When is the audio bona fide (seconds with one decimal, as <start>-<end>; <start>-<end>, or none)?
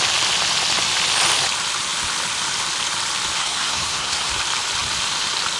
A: 0.0-3.4; 4.3-5.6